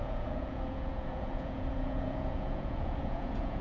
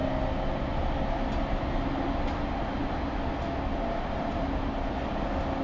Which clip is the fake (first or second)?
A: first